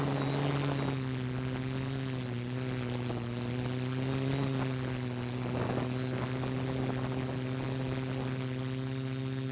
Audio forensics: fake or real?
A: real